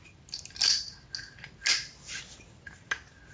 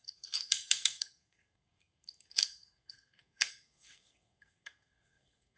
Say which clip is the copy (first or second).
second